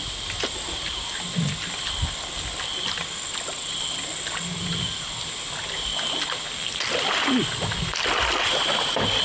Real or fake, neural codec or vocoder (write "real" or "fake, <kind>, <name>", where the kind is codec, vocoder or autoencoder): real